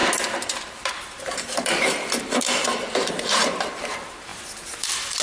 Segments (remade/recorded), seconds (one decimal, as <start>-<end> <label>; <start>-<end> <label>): 0.0-5.2 remade